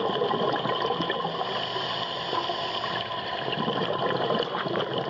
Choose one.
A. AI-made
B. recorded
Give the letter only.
B